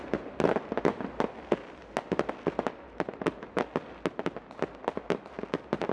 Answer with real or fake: real